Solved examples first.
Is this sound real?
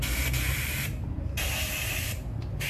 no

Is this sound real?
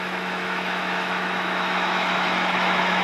no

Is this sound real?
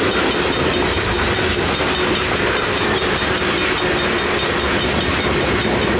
yes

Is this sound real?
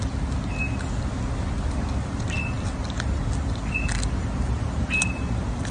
yes